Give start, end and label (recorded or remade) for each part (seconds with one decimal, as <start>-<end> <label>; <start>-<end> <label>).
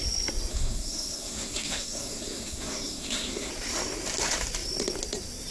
0.0-0.5 recorded; 0.5-3.5 remade; 3.5-5.5 recorded